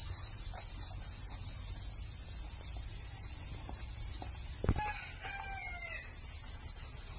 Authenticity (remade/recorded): recorded